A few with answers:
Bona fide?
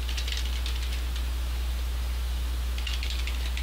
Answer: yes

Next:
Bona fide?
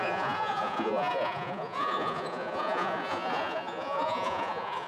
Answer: no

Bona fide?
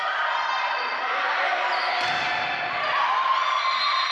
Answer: yes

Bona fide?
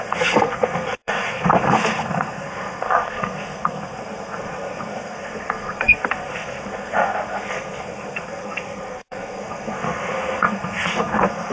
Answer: no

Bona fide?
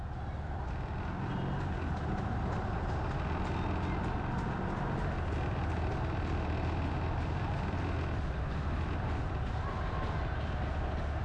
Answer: yes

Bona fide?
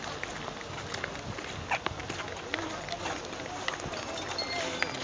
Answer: yes